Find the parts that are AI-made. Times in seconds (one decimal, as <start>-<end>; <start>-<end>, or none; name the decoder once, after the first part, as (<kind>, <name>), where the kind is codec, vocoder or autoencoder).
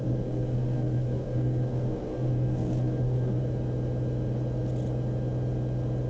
0.0-3.4 (codec, SNAC)